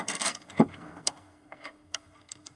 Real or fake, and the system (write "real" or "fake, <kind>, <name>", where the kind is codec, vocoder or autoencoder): fake, codec, SNAC